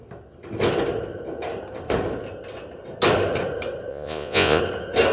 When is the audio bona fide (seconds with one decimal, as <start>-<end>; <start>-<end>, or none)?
0.0-3.9; 4.6-5.1